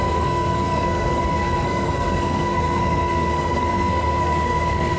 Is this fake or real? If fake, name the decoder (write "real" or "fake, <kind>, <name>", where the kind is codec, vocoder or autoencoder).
fake, codec, SNAC